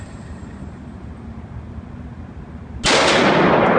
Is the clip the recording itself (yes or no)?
yes